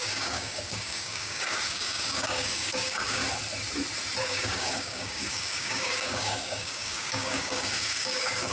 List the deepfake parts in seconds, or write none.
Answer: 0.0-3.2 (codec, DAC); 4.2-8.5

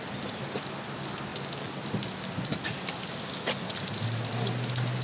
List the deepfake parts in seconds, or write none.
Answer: none